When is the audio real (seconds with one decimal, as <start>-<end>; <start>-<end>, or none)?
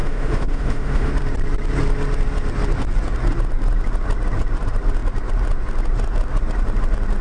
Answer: 1.1-7.2